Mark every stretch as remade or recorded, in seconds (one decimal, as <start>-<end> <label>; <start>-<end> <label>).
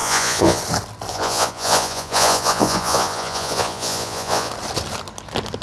0.0-0.6 remade; 0.6-1.1 recorded; 1.1-4.5 remade; 4.5-5.6 recorded